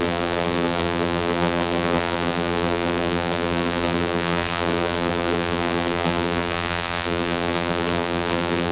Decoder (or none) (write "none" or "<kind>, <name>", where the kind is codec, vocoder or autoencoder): vocoder, BigVGAN v2